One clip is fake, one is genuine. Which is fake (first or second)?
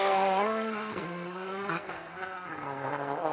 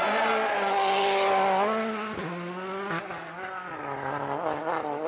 first